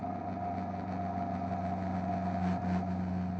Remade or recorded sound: recorded